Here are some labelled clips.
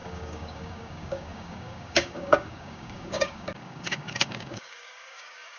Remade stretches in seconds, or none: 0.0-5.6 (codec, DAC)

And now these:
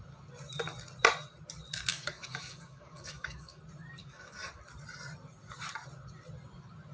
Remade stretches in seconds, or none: 1.9-3.6 (codec, DAC); 4.0-4.6

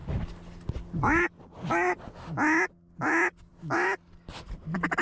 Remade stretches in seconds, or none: none

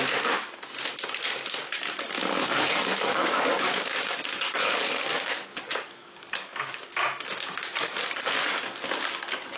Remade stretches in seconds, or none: 2.2-6.8 (codec, DAC)

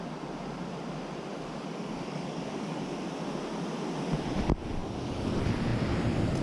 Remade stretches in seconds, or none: 1.3-2.8 (codec, DAC); 4.8-5.3

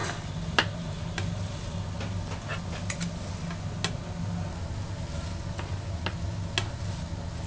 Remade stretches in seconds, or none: none

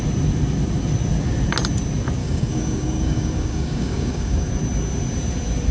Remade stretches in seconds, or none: 2.2-4.5 (codec, DAC)

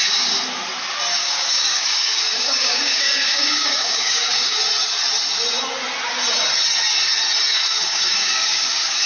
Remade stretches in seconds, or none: 1.2-4.6 (codec, DAC); 7.5-9.1